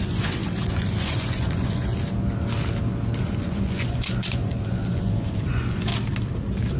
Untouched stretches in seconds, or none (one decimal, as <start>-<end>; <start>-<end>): 1.9-3.2; 5.9-6.8